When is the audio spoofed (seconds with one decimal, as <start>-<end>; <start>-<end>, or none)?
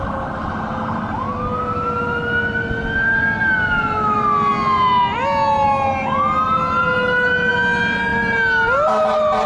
none